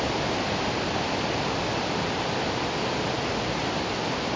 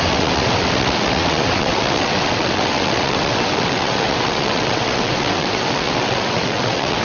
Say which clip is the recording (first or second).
first